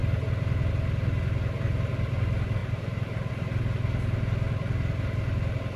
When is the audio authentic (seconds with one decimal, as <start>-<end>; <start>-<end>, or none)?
0.0-2.6; 3.3-5.8